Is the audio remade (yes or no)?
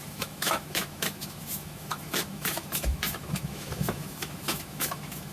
yes